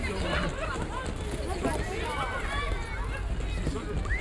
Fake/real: real